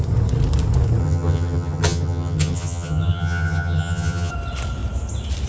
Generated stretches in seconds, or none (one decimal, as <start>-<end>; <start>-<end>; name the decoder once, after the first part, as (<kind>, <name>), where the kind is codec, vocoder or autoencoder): 1.0-4.3 (vocoder, HiFi-GAN)